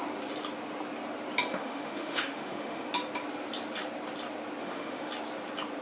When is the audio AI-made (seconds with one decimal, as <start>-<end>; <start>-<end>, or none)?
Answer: 1.5-2.9; 4.6-5.1